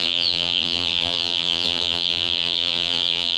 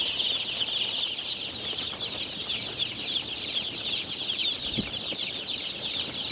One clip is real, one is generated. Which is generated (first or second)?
first